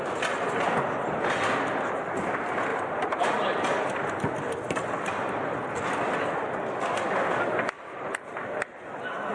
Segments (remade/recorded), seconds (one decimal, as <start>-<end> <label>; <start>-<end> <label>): 0.0-2.7 recorded; 2.7-4.1 remade; 4.1-9.3 recorded